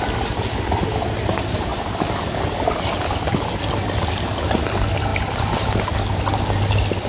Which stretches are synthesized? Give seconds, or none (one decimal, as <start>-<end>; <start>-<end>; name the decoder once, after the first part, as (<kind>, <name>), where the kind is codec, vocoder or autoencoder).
none